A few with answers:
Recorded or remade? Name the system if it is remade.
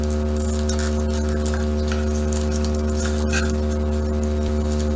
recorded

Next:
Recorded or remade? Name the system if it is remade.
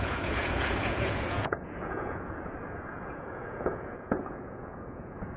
remade, vocoder, Vocos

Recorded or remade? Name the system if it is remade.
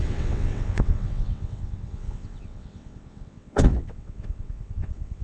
remade, vocoder, WaveNeXt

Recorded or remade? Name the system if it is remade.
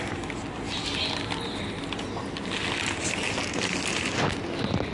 recorded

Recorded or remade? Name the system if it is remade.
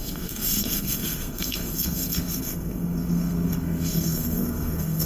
remade, codec, SNAC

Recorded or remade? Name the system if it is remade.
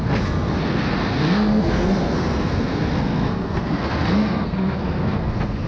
remade, codec, SNAC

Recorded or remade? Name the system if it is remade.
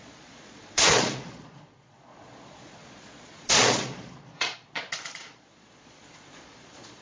remade, vocoder, Vocos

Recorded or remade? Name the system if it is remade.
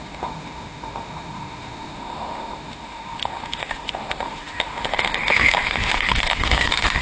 remade, autoencoder, DAC-VAE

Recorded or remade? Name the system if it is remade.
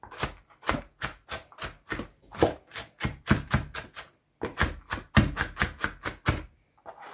recorded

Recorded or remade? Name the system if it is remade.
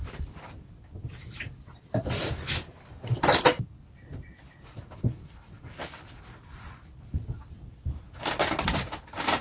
recorded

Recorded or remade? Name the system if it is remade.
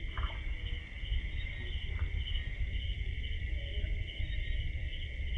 recorded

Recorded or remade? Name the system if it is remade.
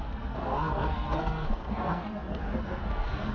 remade, codec, SNAC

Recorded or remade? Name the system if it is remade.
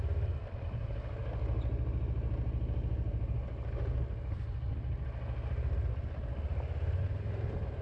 recorded